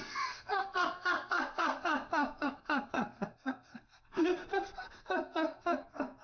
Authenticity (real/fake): fake